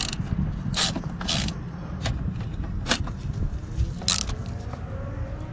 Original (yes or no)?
yes